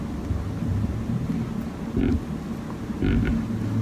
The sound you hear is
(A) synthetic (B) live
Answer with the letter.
B